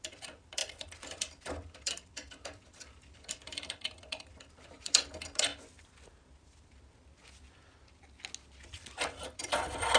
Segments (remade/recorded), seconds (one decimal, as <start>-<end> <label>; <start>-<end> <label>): 0.0-5.5 remade; 5.5-10.0 recorded